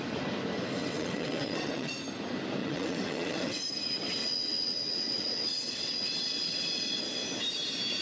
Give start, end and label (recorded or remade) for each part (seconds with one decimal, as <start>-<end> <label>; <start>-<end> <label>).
0.0-0.8 recorded; 0.8-1.9 remade; 1.9-2.6 recorded; 2.6-3.6 remade; 3.6-4.2 recorded; 4.2-7.0 remade; 7.0-8.0 recorded